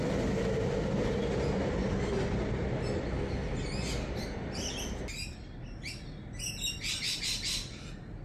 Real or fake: real